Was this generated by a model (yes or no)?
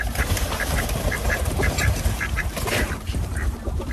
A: yes